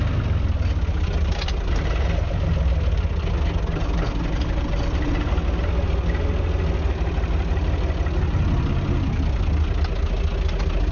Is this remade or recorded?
recorded